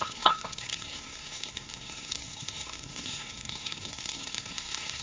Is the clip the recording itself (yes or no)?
no